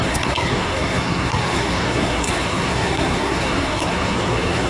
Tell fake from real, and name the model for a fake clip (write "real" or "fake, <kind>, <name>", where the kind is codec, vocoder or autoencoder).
fake, codec, SNAC